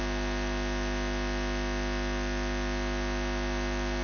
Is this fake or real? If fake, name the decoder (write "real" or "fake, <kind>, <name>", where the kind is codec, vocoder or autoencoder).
real